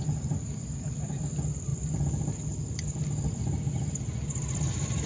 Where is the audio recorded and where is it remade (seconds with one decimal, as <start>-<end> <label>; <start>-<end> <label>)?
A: 0.0-5.1 recorded